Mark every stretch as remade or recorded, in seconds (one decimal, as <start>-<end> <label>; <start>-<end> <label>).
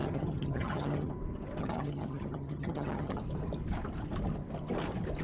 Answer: 0.0-1.1 remade; 1.1-1.6 recorded; 1.6-3.2 remade; 3.2-5.2 recorded